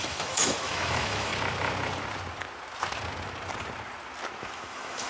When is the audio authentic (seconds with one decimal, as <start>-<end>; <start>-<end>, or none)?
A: 1.3-4.4